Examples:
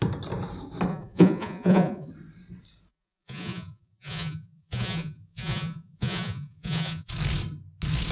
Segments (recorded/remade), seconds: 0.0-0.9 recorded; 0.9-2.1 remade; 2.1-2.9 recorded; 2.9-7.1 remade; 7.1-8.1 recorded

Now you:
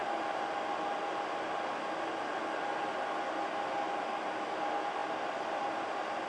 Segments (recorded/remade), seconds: 0.0-6.3 recorded

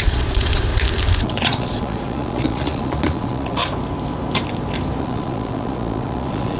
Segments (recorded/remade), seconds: 0.0-0.7 remade; 0.7-1.2 recorded; 1.2-3.6 remade; 3.6-5.0 recorded; 5.0-6.6 remade

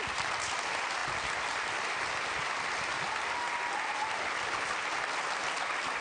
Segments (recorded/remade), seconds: 0.0-6.0 recorded

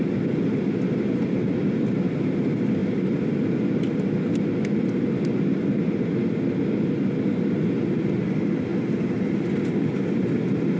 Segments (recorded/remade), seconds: 0.0-10.8 recorded

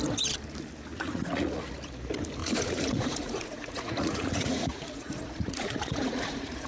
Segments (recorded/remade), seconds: 0.0-0.9 recorded; 0.9-1.6 remade; 1.6-2.4 recorded; 2.4-6.7 remade

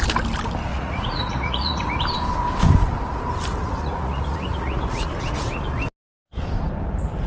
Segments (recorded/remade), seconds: 0.0-0.7 recorded; 0.7-2.0 remade; 2.0-3.6 recorded; 3.6-5.1 remade; 5.1-7.3 recorded

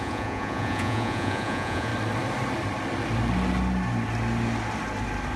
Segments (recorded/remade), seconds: 0.0-1.9 remade; 1.9-5.4 recorded